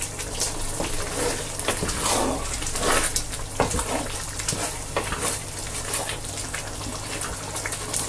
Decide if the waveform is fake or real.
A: real